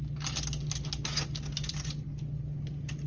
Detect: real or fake real